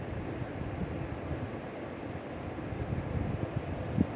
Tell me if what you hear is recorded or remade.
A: recorded